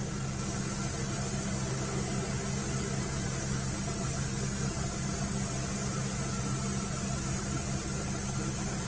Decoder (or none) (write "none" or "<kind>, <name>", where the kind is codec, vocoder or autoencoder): none